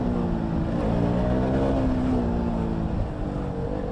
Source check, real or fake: real